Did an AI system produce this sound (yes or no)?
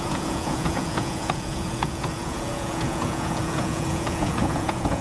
yes